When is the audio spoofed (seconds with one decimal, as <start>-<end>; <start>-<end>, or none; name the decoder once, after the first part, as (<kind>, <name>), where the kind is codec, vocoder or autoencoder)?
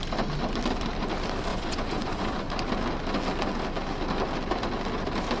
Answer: 1.5-2.5 (vocoder, Vocos)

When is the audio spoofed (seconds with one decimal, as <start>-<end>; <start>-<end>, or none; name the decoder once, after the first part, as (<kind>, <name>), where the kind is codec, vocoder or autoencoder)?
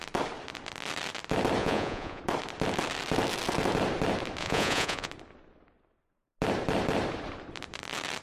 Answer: 1.6-2.2 (vocoder, Vocos); 4.4-5.1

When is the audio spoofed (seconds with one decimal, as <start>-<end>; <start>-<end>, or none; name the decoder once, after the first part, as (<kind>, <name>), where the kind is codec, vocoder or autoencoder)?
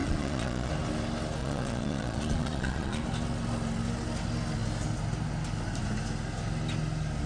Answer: 0.0-0.7 (vocoder, Vocos); 1.4-3.0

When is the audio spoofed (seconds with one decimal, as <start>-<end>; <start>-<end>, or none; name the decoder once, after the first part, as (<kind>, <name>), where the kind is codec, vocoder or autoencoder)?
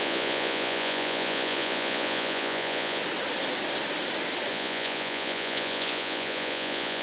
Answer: 0.0-3.0 (vocoder, Vocos); 4.5-7.0